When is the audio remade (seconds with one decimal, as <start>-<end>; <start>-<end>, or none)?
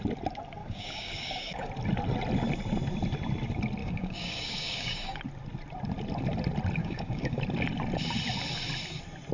0.6-1.7; 3.8-5.2; 6.8-7.4